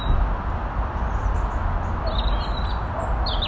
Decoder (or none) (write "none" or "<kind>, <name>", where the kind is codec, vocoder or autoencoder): none